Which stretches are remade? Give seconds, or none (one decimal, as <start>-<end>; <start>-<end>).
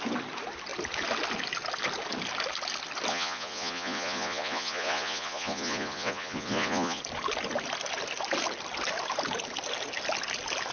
3.1-7.0